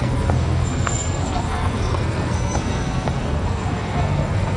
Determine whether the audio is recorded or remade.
remade